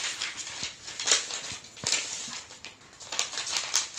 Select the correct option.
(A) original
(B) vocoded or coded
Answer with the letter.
A